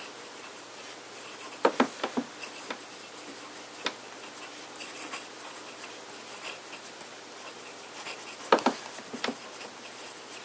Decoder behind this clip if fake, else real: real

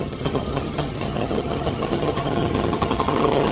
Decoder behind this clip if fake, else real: fake, vocoder, HiFi-GAN